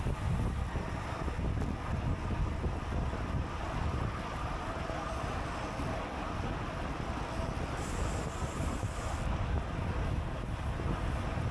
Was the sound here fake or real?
real